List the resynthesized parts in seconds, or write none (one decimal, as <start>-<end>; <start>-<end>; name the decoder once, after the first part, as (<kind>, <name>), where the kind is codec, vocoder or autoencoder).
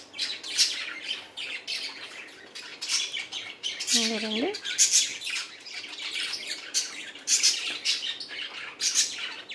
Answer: 2.7-3.8 (vocoder, BigVGAN v2); 5.1-7.7